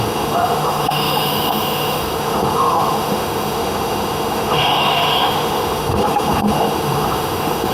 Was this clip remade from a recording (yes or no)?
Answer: yes